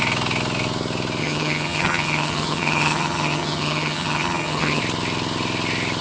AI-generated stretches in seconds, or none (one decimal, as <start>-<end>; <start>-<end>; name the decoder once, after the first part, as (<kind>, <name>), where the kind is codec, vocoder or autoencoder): 1.2-4.8 (vocoder, HiFi-GAN)